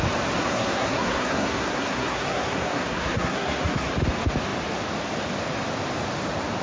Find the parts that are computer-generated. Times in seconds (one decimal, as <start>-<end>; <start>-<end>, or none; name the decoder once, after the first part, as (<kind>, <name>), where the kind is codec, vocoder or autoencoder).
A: 0.4-3.9 (codec, SNAC)

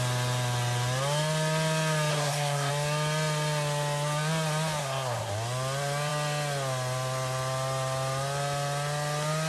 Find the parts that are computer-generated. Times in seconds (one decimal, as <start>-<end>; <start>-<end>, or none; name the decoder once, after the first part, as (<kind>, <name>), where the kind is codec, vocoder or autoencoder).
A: 2.1-2.7 (codec, SNAC); 4.8-5.3

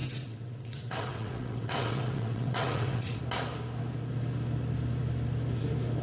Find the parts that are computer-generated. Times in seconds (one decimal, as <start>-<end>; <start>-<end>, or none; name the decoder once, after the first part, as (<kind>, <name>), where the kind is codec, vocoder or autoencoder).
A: 0.0-3.2 (vocoder, WaveNeXt)

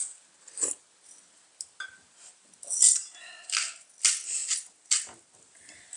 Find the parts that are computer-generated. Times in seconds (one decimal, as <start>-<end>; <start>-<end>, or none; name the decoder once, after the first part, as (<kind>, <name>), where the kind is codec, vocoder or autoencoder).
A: none

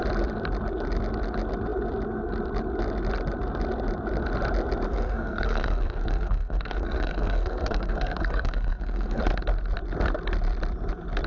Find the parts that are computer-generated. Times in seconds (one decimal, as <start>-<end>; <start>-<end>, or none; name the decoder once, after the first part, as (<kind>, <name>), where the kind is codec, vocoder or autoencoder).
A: 4.9-9.2 (codec, SNAC)

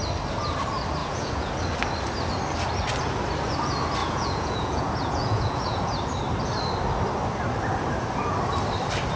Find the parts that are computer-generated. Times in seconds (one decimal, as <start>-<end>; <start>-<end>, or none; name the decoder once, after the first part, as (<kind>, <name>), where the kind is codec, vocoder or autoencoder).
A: 1.0-1.5 (vocoder, Vocos); 4.0-5.9

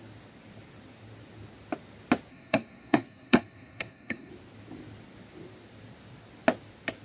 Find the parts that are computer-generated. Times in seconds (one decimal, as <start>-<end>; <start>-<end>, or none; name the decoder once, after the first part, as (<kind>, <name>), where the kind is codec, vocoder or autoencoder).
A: 2.3-4.3 (codec, SNAC)